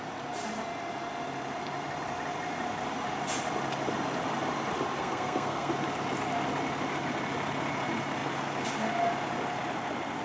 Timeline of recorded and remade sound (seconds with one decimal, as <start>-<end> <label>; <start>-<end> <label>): 0.0-5.0 recorded; 5.0-5.7 remade; 5.7-10.2 recorded